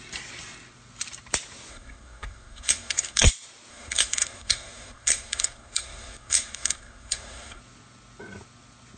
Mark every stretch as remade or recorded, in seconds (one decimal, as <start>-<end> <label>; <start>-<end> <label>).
0.0-1.7 recorded; 1.7-3.3 remade; 3.3-3.7 recorded; 3.7-7.6 remade; 7.6-9.0 recorded